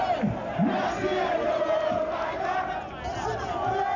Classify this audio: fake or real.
real